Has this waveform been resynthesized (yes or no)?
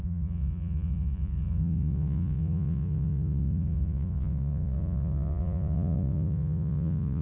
yes